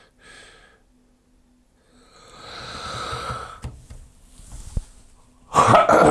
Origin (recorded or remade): recorded